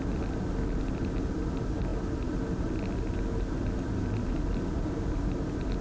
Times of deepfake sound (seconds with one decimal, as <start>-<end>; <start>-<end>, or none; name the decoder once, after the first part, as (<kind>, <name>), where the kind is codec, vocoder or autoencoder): none